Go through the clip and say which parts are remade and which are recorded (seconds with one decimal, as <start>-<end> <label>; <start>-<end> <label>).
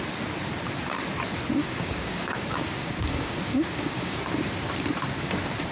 0.0-1.6 recorded; 1.6-4.2 remade; 4.2-5.7 recorded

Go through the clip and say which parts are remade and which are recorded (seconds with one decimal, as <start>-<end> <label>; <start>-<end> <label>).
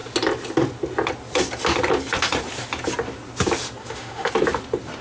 0.0-3.8 recorded; 3.8-4.3 remade; 4.3-5.0 recorded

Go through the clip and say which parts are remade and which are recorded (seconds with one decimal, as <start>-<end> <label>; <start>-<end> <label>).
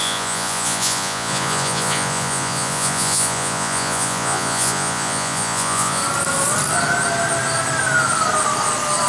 0.0-6.0 remade; 6.0-9.1 recorded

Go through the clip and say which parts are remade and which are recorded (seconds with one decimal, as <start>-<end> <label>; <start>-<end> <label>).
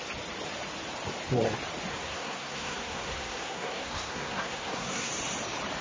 0.0-1.9 recorded; 1.9-5.1 remade; 5.1-5.8 recorded